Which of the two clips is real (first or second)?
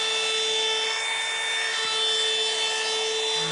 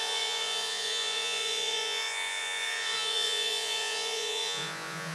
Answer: first